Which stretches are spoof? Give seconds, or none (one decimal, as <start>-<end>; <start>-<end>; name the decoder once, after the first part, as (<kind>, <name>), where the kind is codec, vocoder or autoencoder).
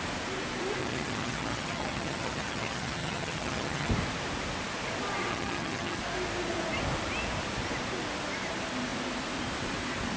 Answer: 0.8-3.9 (vocoder, HiFi-GAN); 5.3-6.0